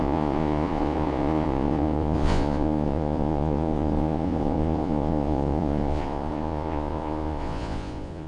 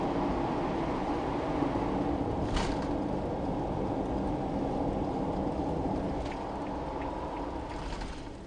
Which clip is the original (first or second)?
second